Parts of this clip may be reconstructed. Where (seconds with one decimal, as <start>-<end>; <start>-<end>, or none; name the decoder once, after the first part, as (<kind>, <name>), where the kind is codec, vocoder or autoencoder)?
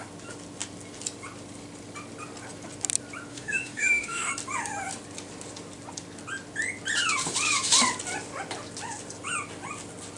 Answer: 3.3-4.3 (autoencoder, DAC-VAE)